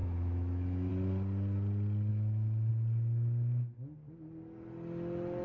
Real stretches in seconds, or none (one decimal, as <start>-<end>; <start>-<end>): 0.9-2.1; 2.7-5.4

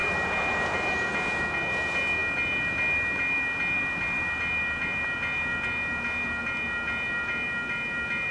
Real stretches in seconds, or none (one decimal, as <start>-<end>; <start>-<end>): 0.0-8.3